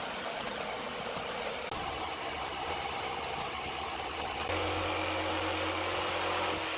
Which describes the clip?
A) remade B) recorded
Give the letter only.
B